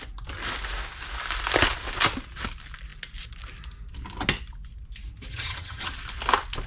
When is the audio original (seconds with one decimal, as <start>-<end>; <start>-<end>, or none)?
0.0-5.3; 5.9-6.7

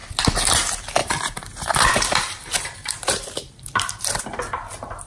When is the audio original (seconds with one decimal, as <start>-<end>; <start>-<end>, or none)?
0.0-1.0; 4.1-5.1